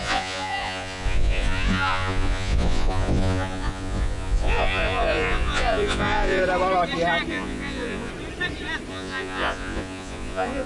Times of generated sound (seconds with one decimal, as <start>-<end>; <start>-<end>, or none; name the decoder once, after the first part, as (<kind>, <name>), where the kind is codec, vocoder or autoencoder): 0.0-6.4 (vocoder, Vocos); 7.3-8.1; 8.9-10.7